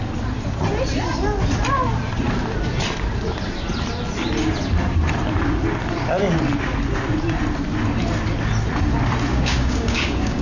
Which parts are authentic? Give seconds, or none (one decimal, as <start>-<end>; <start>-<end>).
0.0-9.3